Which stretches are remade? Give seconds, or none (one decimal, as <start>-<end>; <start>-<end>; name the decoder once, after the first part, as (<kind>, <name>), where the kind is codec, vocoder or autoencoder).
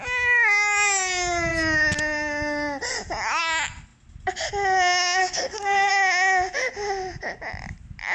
5.2-5.9 (codec, SNAC)